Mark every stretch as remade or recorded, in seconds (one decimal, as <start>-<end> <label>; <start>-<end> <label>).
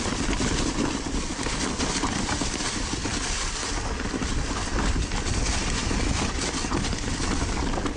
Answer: 0.0-8.0 recorded